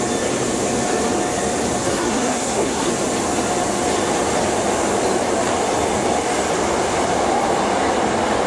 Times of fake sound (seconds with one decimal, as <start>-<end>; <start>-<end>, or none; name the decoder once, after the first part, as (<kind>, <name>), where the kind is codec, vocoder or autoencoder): 1.8-2.9 (codec, SNAC)